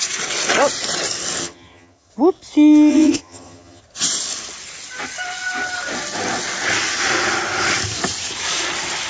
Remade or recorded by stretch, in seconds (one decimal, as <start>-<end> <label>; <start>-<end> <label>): 0.0-1.4 recorded; 1.4-2.1 remade; 2.1-2.9 recorded; 2.9-3.8 remade; 3.8-9.1 recorded